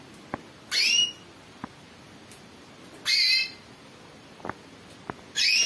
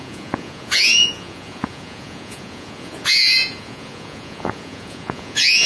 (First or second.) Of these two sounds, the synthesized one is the second